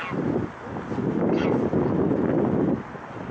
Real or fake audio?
real